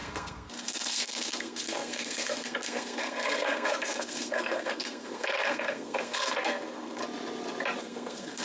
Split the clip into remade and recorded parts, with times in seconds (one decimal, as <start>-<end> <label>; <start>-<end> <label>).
0.0-7.0 remade; 7.0-7.8 recorded; 7.8-8.4 remade